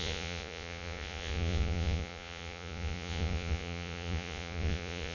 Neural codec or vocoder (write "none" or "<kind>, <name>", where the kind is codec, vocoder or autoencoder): vocoder, Vocos